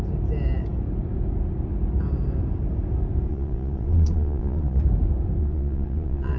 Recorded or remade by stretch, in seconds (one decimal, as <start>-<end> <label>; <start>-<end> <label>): 0.0-3.3 recorded; 3.3-4.8 remade; 4.8-5.4 recorded; 5.4-6.4 remade